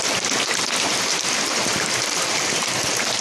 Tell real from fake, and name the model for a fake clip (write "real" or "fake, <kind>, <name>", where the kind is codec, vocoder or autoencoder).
real